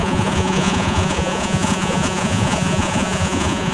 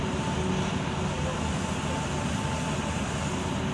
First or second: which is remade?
first